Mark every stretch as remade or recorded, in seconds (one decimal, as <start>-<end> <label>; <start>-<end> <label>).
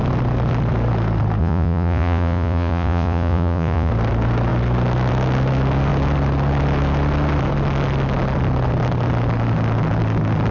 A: 0.0-1.4 recorded; 1.4-3.9 remade; 3.9-10.5 recorded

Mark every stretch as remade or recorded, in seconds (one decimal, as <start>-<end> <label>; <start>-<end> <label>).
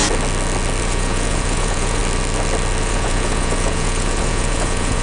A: 0.0-0.8 recorded; 0.8-2.0 remade; 2.0-2.8 recorded; 2.8-5.0 remade